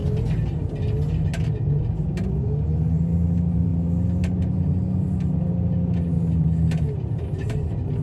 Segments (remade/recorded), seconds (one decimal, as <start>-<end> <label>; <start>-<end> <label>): 0.0-8.0 recorded